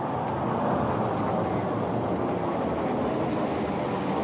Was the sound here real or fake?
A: real